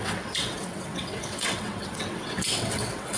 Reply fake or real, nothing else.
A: fake